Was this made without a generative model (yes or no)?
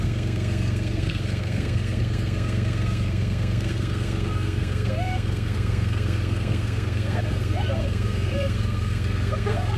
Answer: no